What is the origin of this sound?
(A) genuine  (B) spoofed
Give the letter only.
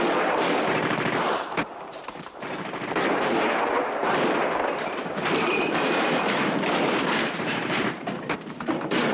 B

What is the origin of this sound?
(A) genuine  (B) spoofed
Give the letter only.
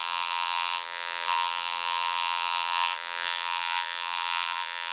B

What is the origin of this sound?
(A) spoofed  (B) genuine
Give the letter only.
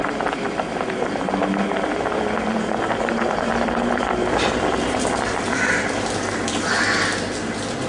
A